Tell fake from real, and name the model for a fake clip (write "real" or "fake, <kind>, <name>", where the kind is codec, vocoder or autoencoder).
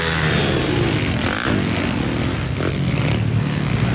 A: real